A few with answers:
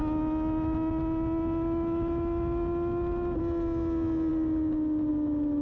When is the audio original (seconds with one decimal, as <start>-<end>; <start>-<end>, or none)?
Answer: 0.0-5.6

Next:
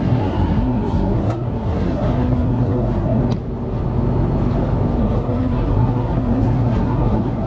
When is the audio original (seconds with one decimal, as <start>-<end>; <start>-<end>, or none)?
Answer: 3.2-5.0

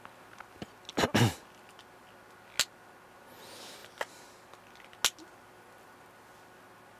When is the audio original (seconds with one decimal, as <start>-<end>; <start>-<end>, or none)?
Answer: 0.0-7.0

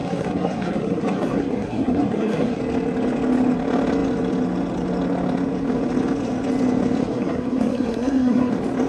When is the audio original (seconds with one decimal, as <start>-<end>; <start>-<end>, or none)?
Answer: 2.6-7.0; 8.5-8.9

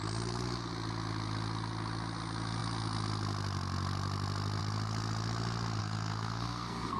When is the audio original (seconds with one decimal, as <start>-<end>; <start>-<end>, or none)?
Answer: 0.0-5.8